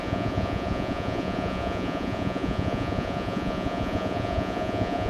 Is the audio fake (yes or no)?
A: yes